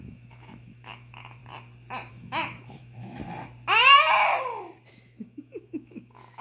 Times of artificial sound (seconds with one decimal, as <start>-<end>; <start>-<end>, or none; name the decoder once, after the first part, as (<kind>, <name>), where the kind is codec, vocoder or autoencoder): 0.0-1.4 (autoencoder, DAC-VAE); 2.1-3.2; 4.9-6.4